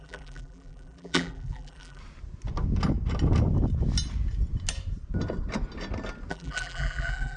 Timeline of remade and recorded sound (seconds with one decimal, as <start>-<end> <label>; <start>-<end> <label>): 0.0-2.0 remade; 2.0-6.3 recorded; 6.3-7.4 remade